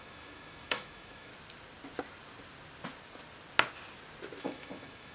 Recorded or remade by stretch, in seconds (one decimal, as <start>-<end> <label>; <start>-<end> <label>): 0.0-1.3 remade; 1.3-4.4 recorded; 4.4-5.1 remade